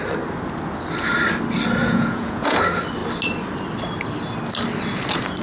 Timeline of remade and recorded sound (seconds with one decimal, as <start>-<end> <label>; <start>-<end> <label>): 0.0-1.8 recorded; 1.8-2.6 remade; 2.6-5.4 recorded